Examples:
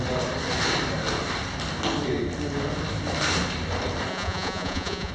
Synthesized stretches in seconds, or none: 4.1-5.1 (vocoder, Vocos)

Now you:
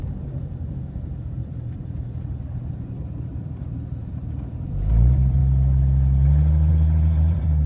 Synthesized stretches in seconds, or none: 0.0-5.4 (vocoder, BigVGAN v2); 6.7-7.7

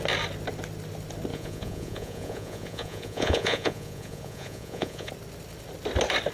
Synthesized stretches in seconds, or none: 1.3-5.1 (vocoder, Vocos)

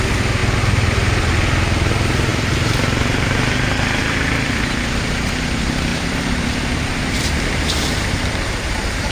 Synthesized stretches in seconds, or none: 5.9-9.1 (vocoder, BigVGAN v2)

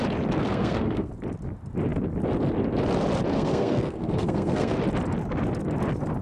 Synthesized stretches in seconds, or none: 0.5-1.1 (codec, SNAC); 3.3-4.8